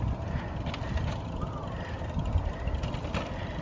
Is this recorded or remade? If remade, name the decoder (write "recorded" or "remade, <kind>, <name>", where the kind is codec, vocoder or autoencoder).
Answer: recorded